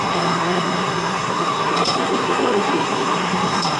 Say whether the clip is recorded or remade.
remade